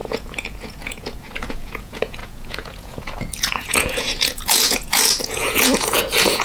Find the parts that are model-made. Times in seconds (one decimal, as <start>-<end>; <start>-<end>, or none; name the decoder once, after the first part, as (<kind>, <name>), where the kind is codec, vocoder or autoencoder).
0.0-6.4 (vocoder, Vocos)